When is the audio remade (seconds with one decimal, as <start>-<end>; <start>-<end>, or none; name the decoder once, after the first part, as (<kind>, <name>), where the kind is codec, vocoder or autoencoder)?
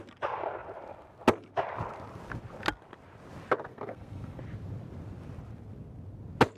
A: 3.7-4.4 (codec, SNAC)